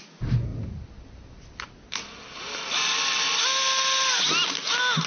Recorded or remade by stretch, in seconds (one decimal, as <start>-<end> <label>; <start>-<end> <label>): 0.0-5.1 recorded